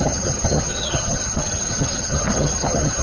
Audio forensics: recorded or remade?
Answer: remade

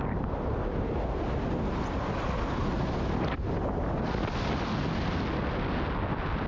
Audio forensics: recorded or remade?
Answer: recorded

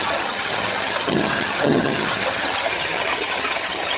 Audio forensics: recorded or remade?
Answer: remade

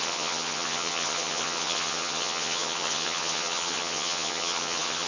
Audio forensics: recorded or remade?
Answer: remade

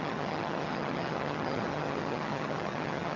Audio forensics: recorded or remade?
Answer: remade